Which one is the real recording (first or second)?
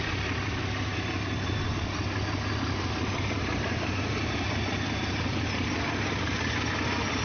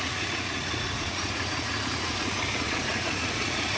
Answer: first